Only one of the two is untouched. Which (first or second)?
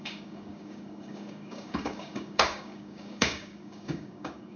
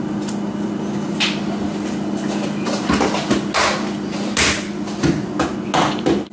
second